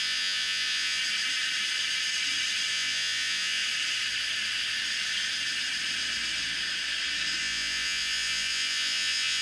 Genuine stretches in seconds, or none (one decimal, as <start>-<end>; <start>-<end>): 1.0-2.7; 3.6-7.4